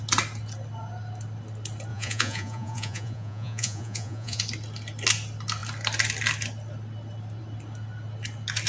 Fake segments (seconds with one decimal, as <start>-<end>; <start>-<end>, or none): 1.9-4.4